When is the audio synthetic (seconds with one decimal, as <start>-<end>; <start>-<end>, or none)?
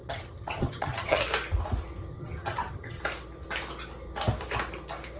0.0-1.2; 2.1-3.0